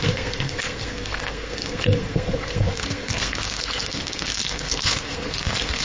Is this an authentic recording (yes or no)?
no